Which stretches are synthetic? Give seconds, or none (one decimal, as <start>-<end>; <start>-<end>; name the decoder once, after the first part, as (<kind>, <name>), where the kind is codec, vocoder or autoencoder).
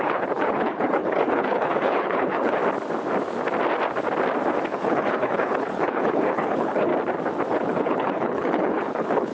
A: 0.0-2.6 (codec, HILCodec); 4.6-6.9; 7.5-9.3